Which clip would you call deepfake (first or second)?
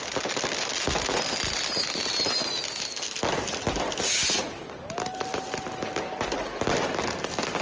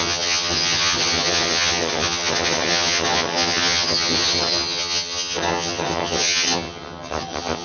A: second